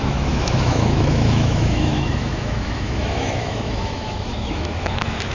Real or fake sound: fake